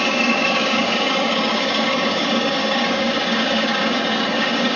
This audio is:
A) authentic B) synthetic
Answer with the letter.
B